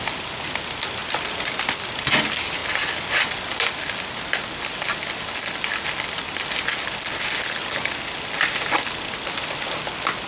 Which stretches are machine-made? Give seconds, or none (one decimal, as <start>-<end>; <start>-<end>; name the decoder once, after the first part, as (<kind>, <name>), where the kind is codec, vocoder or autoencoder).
1.0-2.1 (vocoder, BigVGAN v2)